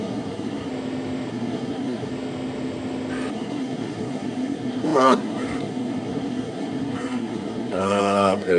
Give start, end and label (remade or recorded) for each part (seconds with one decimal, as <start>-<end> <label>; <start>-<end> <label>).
0.0-0.7 remade; 0.7-1.3 recorded; 1.3-2.1 remade; 2.1-3.3 recorded; 3.3-8.6 remade

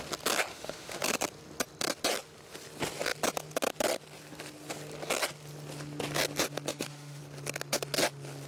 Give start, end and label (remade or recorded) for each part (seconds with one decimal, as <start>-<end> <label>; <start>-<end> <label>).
0.0-0.5 recorded; 0.5-1.0 remade; 1.0-6.7 recorded; 6.7-7.2 remade; 7.2-8.5 recorded

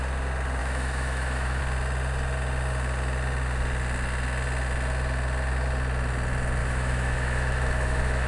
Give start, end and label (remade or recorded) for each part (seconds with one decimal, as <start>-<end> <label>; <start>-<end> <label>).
0.0-0.6 recorded; 0.6-1.6 remade; 1.6-6.6 recorded; 6.6-8.3 remade

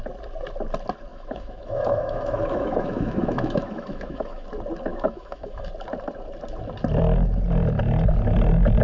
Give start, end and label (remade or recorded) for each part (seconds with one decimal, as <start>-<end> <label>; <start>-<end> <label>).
0.0-1.1 recorded; 1.1-4.5 remade; 4.5-4.9 recorded; 4.9-5.7 remade; 5.7-8.8 recorded

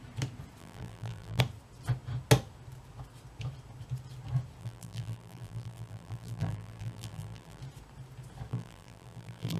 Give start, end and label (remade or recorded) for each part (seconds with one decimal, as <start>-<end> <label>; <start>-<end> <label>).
0.0-0.6 recorded; 0.6-1.4 remade; 1.4-4.6 recorded; 4.6-7.6 remade; 7.6-8.5 recorded; 8.5-9.6 remade

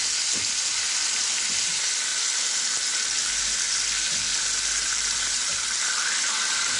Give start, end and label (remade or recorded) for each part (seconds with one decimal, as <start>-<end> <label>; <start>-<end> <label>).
0.0-3.2 recorded; 3.2-6.8 remade

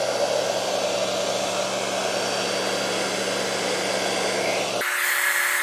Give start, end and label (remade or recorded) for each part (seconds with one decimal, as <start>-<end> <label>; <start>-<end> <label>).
0.0-5.6 recorded

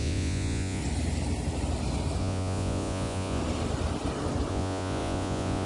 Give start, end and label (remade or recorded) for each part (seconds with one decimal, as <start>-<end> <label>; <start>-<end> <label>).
0.0-0.8 remade; 0.8-2.2 recorded; 2.2-3.4 remade; 3.4-4.5 recorded; 4.5-5.7 remade